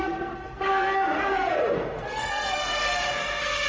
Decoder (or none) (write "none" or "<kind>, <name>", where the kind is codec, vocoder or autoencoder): codec, SNAC